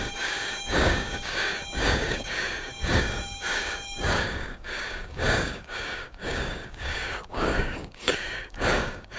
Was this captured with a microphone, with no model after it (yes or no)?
no